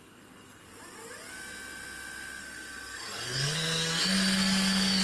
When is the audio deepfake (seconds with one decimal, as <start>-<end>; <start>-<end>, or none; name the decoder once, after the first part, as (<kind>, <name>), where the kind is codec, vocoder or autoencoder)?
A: 0.0-0.6 (codec, SNAC); 2.4-5.0